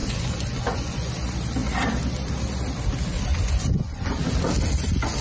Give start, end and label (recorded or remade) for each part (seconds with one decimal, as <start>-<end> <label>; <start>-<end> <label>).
0.0-1.1 remade; 1.1-3.3 recorded; 3.3-4.2 remade; 4.2-5.2 recorded